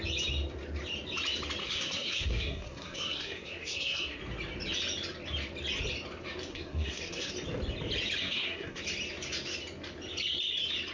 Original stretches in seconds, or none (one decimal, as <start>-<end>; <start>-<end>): 0.0-1.6; 4.2-6.5; 7.3-8.2; 8.8-10.9